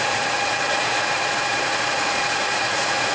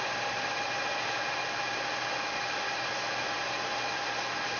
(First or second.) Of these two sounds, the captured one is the second